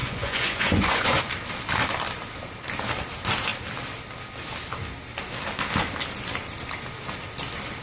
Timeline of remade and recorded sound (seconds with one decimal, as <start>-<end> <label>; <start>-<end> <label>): 0.0-1.2 remade; 1.2-7.8 recorded